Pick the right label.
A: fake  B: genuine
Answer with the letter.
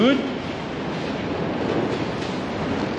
B